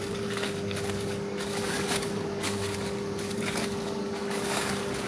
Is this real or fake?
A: fake